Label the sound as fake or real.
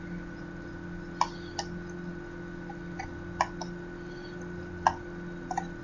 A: real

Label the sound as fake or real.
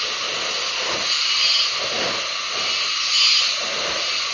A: real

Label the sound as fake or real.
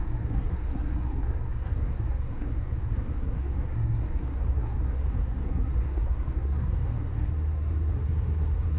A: fake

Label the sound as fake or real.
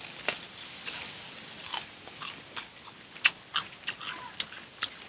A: real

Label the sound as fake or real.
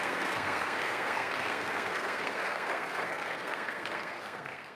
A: fake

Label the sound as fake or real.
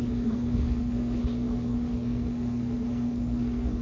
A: fake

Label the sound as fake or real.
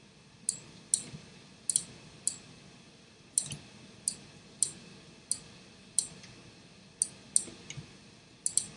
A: real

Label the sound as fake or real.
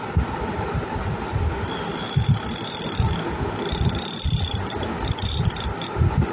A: real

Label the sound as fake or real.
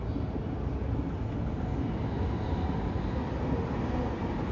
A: real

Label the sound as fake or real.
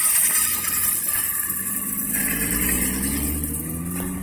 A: real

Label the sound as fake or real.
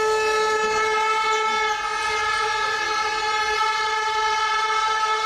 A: real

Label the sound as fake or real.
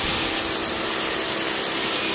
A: real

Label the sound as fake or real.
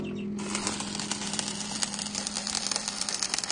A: real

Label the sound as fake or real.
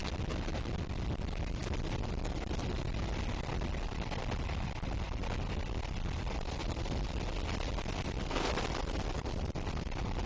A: real